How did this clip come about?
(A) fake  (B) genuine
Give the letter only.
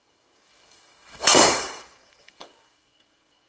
A